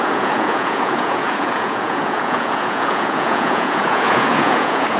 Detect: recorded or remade remade